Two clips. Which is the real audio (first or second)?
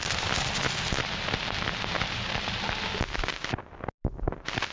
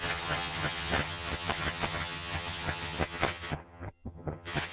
first